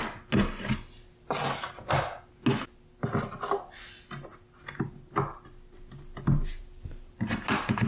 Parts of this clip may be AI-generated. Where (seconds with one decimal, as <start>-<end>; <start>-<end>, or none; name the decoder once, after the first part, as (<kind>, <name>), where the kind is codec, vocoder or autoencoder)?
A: none